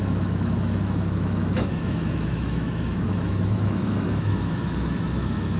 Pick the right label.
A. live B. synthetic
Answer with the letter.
B